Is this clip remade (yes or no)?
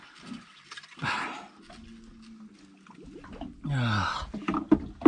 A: no